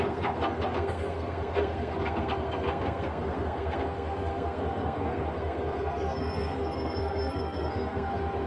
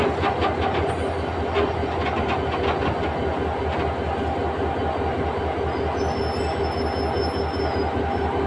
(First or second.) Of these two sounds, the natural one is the second